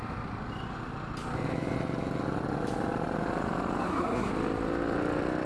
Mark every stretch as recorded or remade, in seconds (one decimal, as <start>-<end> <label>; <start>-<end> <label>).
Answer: 0.0-3.8 recorded; 3.8-4.3 remade; 4.3-5.5 recorded

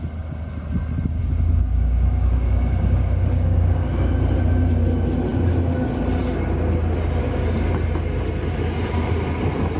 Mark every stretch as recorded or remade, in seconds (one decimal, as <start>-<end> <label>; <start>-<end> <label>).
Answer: 0.0-1.2 recorded; 1.2-4.1 remade; 4.1-7.2 recorded; 7.2-7.7 remade; 7.7-9.8 recorded

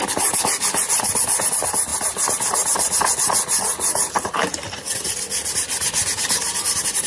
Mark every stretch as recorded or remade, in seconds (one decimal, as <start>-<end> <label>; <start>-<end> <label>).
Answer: 0.0-7.1 recorded

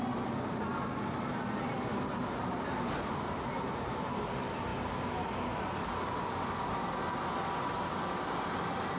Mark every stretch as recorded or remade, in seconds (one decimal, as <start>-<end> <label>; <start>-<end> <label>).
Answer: 0.0-9.0 recorded

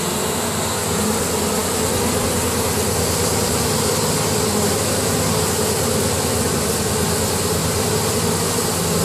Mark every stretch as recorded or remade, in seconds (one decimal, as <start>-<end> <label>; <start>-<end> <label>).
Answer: 0.0-7.6 recorded; 7.6-8.2 remade; 8.2-9.0 recorded

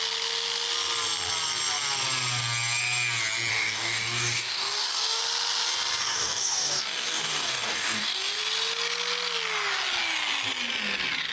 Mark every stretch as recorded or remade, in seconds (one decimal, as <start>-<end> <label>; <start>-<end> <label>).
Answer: 0.0-3.5 recorded; 3.5-5.2 remade; 5.2-6.0 recorded; 6.0-8.4 remade; 8.4-11.3 recorded